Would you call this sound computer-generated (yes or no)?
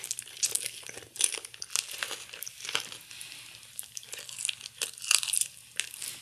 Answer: no